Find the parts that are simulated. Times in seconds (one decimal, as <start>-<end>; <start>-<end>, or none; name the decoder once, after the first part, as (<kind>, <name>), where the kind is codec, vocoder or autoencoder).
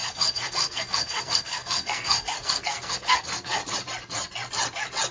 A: 0.0-3.6 (codec, SNAC)